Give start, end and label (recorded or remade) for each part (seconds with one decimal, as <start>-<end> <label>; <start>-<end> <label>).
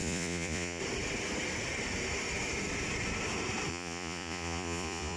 0.0-0.8 remade; 0.8-3.7 recorded; 3.7-5.2 remade